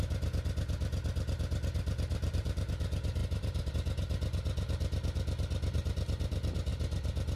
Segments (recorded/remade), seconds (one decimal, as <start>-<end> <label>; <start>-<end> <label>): 0.0-2.1 recorded; 2.1-2.7 remade; 2.7-3.2 recorded; 3.2-3.7 remade; 3.7-7.4 recorded

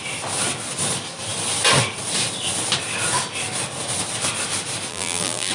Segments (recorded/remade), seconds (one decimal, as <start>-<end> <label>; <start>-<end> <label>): 0.0-4.9 recorded; 4.9-5.5 remade

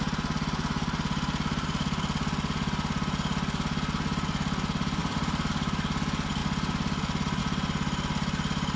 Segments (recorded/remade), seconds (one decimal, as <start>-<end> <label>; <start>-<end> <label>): 0.0-5.0 recorded; 5.0-5.5 remade; 5.5-8.8 recorded

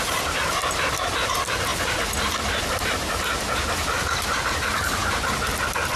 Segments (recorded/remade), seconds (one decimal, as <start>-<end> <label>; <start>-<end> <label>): 0.0-6.0 recorded

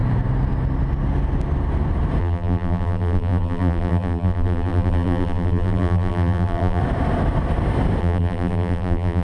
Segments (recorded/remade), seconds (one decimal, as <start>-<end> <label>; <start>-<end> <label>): 0.0-2.2 recorded; 2.2-6.8 remade; 6.8-8.0 recorded; 8.0-9.2 remade

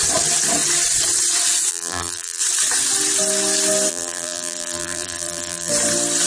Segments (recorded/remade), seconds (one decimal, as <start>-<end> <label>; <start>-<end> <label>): 0.0-1.7 recorded; 1.7-2.4 remade; 2.4-3.9 recorded; 3.9-5.7 remade; 5.7-6.3 recorded

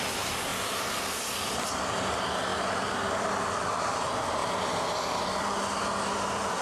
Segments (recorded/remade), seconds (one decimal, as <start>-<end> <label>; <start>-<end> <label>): 0.0-0.5 remade; 0.5-1.4 recorded; 1.4-2.5 remade; 2.5-3.1 recorded; 3.1-4.4 remade; 4.4-5.4 recorded; 5.4-6.6 remade

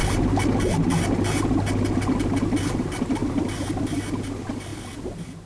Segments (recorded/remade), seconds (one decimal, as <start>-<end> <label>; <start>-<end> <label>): 0.0-3.2 recorded; 3.2-4.0 remade; 4.0-4.7 recorded; 4.7-5.5 remade